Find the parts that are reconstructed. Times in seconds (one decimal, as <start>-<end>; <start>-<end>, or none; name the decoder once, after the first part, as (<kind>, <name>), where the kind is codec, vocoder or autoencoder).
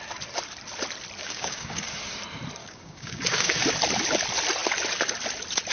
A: 1.2-1.9 (codec, DAC); 2.6-3.6